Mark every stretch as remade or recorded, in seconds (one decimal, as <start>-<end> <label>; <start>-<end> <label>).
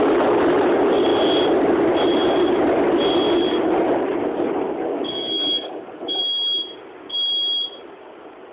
0.0-4.9 recorded; 4.9-6.2 remade; 6.2-8.5 recorded